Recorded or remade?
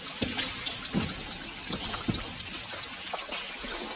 recorded